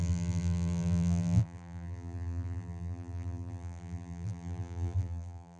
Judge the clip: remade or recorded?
remade